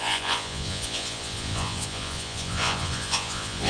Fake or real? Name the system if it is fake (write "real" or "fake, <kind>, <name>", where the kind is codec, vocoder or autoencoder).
fake, vocoder, Vocos